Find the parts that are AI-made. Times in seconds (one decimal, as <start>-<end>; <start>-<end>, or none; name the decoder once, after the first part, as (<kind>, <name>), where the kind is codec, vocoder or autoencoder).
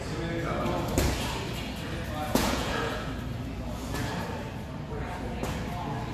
2.3-3.1 (vocoder, Vocos)